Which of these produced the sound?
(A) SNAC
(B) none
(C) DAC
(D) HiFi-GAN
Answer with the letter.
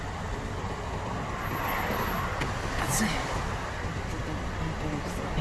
B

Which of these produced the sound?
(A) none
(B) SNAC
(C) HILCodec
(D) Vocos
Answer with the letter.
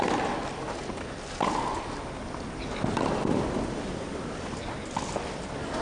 A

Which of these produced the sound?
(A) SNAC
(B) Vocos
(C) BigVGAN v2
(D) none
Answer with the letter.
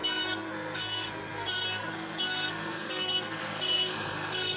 A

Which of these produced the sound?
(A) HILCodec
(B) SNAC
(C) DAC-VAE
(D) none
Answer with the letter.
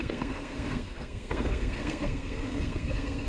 B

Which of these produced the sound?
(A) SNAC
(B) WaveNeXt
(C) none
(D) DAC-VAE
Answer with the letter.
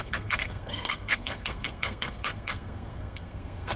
A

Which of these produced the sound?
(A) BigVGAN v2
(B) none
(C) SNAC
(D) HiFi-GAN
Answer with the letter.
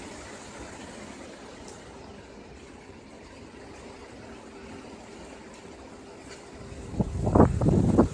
B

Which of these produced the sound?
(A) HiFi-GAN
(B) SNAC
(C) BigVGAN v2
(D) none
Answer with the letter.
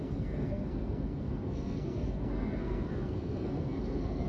B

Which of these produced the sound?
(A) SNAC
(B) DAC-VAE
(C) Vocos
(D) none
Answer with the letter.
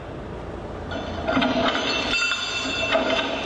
D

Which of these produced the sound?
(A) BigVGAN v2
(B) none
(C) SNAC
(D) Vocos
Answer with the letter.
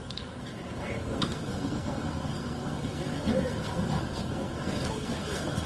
C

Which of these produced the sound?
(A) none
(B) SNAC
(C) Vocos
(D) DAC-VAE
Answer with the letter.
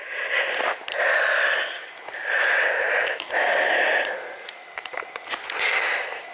A